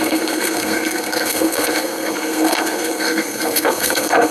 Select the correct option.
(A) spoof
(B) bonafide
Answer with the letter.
A